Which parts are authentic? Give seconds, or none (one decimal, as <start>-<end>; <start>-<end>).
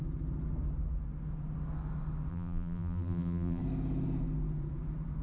0.0-2.3; 3.6-5.2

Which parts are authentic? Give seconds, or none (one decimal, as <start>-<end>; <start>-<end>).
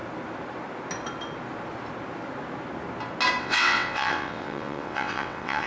0.0-3.4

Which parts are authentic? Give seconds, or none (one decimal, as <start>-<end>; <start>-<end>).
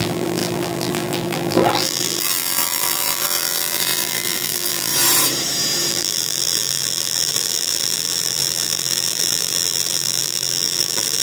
4.9-5.9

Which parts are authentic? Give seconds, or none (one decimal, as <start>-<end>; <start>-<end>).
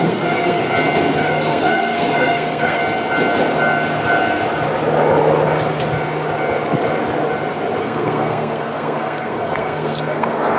0.6-1.2; 2.8-7.8